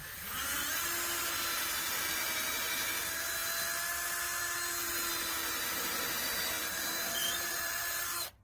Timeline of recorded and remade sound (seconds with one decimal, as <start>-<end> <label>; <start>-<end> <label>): 0.0-7.2 recorded; 7.2-8.4 remade